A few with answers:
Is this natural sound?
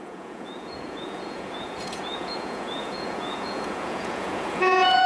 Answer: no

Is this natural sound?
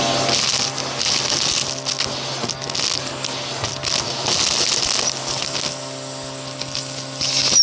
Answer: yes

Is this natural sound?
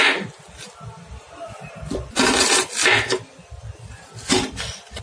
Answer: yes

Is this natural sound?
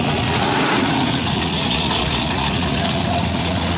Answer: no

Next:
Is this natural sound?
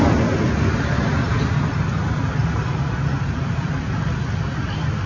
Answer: yes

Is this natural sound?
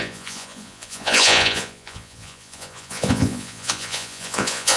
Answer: no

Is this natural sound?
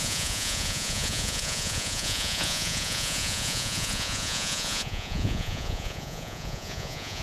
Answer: no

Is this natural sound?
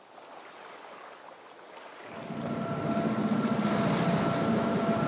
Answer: yes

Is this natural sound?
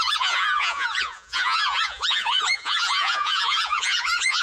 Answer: no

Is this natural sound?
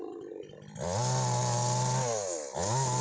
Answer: yes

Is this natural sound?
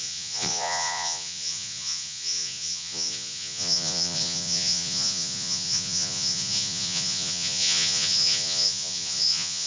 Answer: no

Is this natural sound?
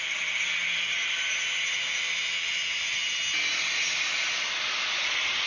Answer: yes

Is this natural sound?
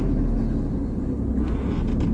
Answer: yes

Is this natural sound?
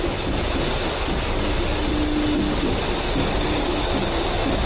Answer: yes